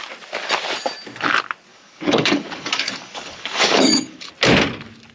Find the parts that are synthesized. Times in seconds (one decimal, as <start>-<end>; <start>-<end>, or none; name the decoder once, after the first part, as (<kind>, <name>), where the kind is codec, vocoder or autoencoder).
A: 1.7-4.3 (codec, DAC)